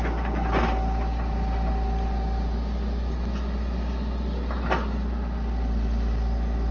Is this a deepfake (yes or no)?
no